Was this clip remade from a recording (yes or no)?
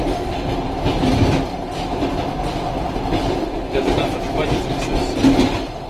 no